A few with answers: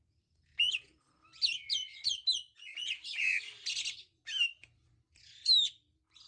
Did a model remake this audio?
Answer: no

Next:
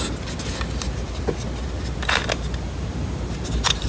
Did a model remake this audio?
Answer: no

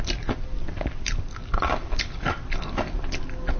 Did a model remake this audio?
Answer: no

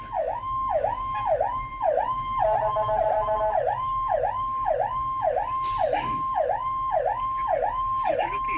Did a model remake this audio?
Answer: no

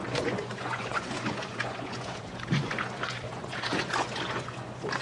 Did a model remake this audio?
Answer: yes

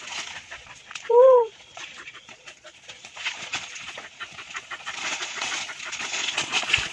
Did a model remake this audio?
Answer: yes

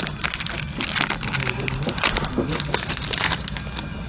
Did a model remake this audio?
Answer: no